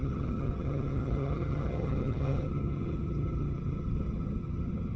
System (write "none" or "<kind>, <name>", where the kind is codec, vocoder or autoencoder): vocoder, HiFi-GAN